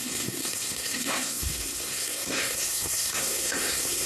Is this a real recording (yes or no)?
no